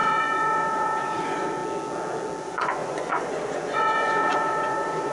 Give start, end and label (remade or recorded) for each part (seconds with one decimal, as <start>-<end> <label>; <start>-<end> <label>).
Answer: 0.0-1.6 remade; 1.6-2.4 recorded; 2.4-5.1 remade